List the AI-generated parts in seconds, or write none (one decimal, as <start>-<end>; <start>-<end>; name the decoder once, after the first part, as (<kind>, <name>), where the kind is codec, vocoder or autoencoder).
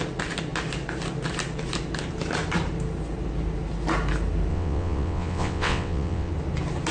4.5-6.3 (vocoder, WaveNeXt)